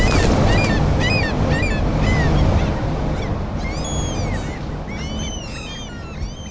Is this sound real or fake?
real